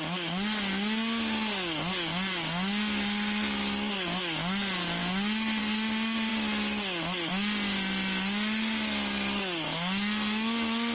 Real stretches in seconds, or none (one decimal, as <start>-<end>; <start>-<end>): 0.0-10.9